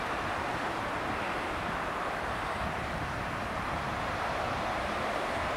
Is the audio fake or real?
real